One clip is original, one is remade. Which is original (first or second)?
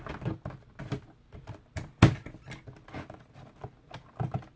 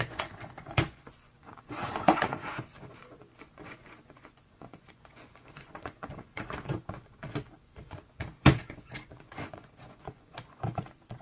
first